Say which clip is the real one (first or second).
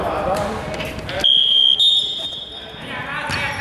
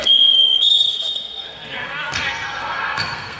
first